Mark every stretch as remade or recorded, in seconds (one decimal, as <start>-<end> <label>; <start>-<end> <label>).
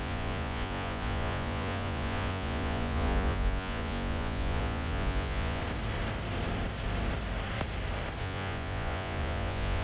0.0-5.6 remade; 5.6-8.2 recorded; 8.2-9.8 remade